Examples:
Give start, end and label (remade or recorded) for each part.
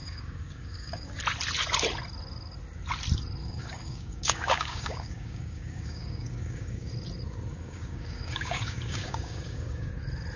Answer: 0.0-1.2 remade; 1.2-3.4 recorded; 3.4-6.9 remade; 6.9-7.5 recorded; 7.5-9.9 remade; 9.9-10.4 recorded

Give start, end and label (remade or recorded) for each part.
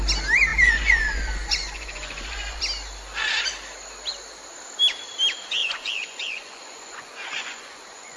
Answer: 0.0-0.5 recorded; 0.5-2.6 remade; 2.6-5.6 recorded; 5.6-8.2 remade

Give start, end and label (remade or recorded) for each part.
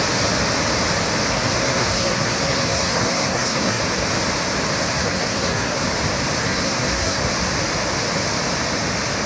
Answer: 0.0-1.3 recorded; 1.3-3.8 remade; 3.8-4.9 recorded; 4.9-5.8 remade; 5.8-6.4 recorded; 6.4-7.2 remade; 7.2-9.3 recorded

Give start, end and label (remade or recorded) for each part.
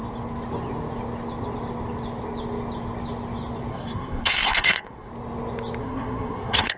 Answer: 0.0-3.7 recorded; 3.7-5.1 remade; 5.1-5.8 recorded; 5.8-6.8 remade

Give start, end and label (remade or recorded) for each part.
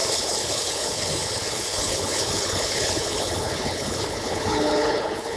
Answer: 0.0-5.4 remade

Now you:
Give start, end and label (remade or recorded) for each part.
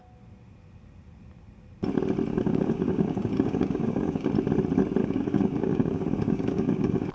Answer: 0.0-2.3 recorded; 2.3-4.3 remade; 4.3-5.0 recorded; 5.0-7.1 remade